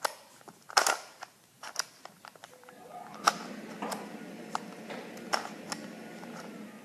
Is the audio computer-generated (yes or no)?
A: no